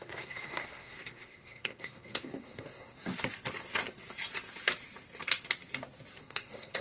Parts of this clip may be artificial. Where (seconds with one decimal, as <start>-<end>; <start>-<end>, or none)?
0.0-3.1; 6.2-6.8